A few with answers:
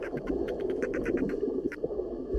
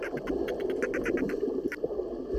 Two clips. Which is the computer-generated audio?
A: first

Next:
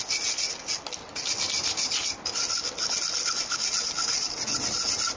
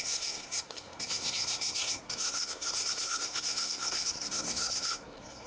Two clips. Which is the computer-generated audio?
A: second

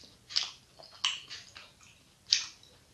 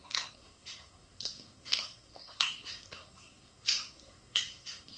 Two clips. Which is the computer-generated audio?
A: second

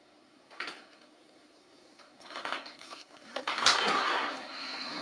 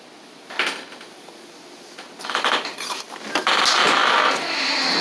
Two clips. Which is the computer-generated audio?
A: first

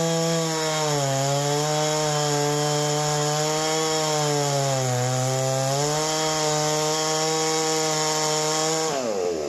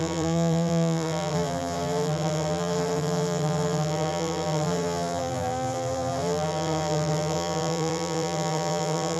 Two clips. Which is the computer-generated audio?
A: second